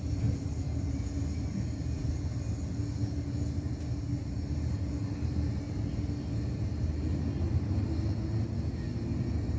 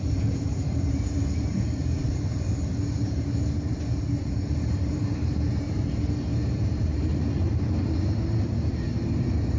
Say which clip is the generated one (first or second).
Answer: second